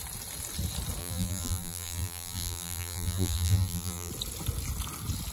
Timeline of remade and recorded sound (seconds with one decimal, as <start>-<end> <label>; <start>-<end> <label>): 0.0-1.0 recorded; 1.0-4.1 remade; 4.1-5.3 recorded